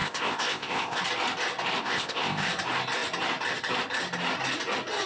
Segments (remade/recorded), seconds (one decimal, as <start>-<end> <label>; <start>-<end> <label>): 0.0-1.0 remade; 1.0-1.8 recorded; 1.8-2.5 remade; 2.5-5.1 recorded